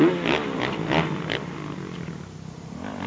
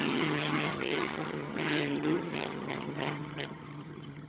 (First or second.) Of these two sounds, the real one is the first